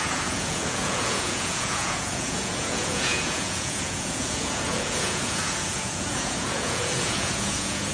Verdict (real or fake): fake